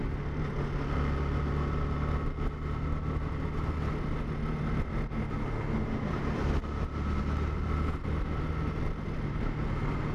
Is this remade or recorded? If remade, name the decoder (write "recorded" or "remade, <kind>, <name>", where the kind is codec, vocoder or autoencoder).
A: recorded